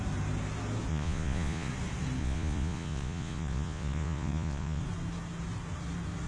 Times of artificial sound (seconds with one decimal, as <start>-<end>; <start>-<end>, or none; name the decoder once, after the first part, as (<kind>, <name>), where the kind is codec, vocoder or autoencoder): 0.9-1.7 (vocoder, Vocos); 2.2-4.8